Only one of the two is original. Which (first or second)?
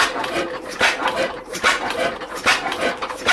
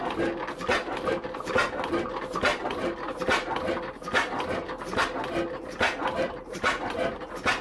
second